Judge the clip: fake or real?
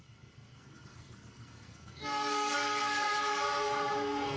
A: fake